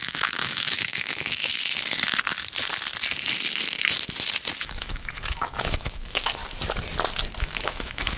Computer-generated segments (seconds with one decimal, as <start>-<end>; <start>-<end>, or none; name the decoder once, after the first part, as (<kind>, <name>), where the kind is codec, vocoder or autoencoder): 0.0-1.5 (autoencoder, DAC-VAE); 4.5-6.4; 7.4-8.2